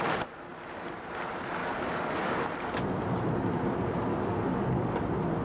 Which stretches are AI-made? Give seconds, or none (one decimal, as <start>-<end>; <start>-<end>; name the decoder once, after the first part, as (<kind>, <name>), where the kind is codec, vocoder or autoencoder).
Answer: 1.6-2.5 (codec, DAC); 4.1-5.0